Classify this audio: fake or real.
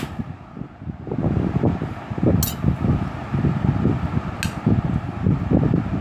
real